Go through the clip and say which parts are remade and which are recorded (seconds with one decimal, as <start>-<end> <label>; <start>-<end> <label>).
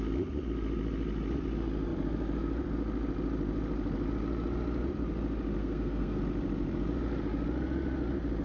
0.0-5.6 recorded; 5.6-6.2 remade; 6.2-8.4 recorded